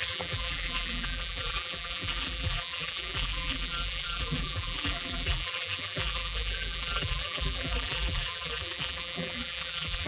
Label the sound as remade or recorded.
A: remade